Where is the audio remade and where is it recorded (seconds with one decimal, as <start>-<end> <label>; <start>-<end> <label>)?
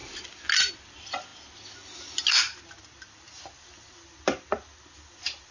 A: 0.0-5.5 recorded